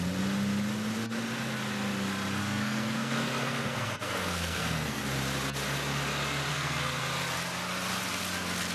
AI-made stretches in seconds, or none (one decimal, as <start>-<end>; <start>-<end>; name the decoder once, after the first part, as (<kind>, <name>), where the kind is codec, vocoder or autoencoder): 2.4-5.0 (codec, SNAC); 6.5-7.0